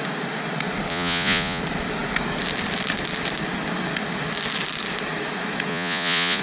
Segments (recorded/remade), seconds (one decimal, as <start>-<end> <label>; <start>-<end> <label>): 0.0-0.9 recorded; 0.9-1.6 remade; 1.6-5.7 recorded; 5.7-6.4 remade

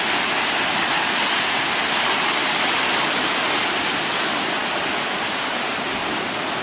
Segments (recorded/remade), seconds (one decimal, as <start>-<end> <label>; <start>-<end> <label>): 0.0-6.6 recorded

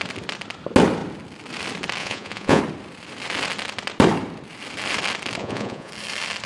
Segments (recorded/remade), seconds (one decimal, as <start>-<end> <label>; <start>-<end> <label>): 0.0-2.0 recorded; 2.0-2.6 remade; 2.6-5.4 recorded; 5.4-5.9 remade; 5.9-6.5 recorded

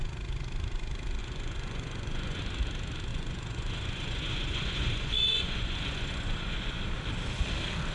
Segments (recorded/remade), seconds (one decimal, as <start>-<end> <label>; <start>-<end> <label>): 0.0-1.2 recorded; 1.2-2.4 remade; 2.4-3.1 recorded; 3.1-6.8 remade; 6.8-7.9 recorded

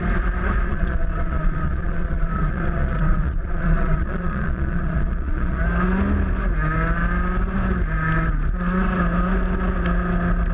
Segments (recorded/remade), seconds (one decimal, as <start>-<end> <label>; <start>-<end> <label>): 0.0-0.7 recorded; 0.7-5.6 remade; 5.6-10.5 recorded

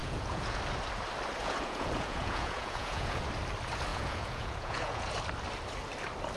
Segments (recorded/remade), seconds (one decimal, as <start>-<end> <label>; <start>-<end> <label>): 0.0-0.6 remade; 0.6-1.4 recorded; 1.4-3.2 remade; 3.2-3.9 recorded; 3.9-5.1 remade; 5.1-6.4 recorded